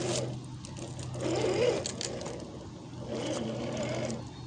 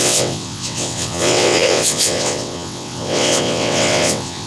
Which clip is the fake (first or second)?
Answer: second